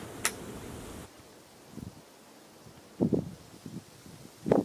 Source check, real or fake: real